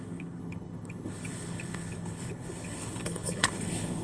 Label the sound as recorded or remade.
remade